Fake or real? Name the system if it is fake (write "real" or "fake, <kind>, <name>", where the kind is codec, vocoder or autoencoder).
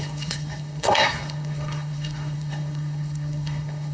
fake, codec, SNAC